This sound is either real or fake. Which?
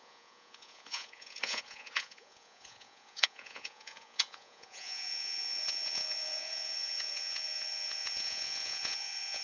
fake